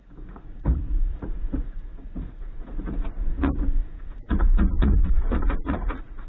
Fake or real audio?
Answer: fake